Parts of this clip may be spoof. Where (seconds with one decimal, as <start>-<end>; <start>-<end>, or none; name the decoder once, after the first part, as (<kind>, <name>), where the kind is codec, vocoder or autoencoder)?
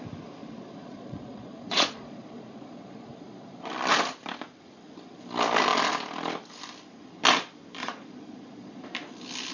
0.4-3.7 (vocoder, Vocos); 7.8-8.8